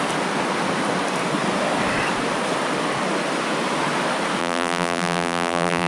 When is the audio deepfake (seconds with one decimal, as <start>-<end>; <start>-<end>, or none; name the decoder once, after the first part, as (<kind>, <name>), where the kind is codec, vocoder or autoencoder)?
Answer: 4.4-5.9 (vocoder, BigVGAN v2)